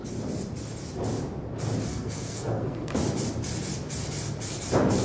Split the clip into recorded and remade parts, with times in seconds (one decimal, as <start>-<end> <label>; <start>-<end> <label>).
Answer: 0.0-1.9 recorded; 1.9-3.0 remade; 3.0-5.0 recorded

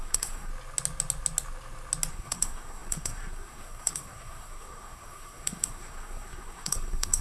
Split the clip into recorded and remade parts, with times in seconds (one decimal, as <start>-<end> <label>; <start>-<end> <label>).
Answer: 0.0-0.5 remade; 0.5-2.1 recorded; 2.1-7.2 remade

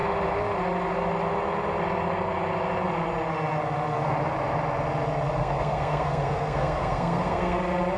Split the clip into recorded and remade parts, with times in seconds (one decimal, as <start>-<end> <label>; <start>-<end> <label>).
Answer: 0.0-5.4 recorded; 5.4-7.6 remade; 7.6-8.0 recorded

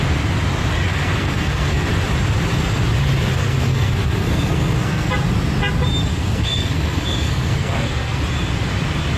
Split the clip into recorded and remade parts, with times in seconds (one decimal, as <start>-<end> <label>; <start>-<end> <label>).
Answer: 0.0-0.9 recorded; 0.9-1.9 remade; 1.9-3.4 recorded; 3.4-5.1 remade; 5.1-6.1 recorded; 6.1-8.2 remade; 8.2-9.2 recorded

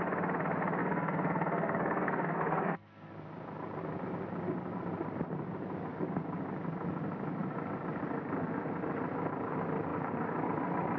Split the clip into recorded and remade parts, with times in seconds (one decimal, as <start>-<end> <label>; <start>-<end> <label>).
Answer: 0.0-0.8 recorded; 0.8-3.1 remade; 3.1-11.0 recorded